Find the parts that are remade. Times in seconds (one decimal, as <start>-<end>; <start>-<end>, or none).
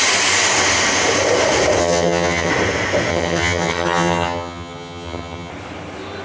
1.8-2.5; 3.1-5.5